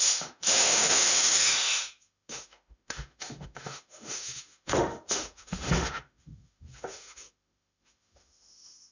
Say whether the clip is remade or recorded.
remade